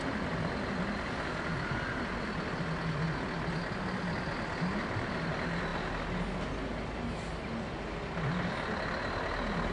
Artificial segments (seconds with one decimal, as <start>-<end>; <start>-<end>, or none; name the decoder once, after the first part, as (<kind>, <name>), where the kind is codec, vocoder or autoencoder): none